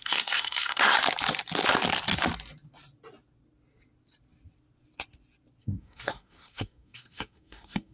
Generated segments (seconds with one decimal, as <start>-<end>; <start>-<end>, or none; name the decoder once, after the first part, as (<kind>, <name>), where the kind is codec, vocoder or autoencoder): 0.0-1.0 (codec, SNAC); 5.6-7.9